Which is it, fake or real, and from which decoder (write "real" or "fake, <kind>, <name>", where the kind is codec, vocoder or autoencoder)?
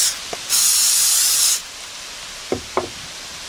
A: real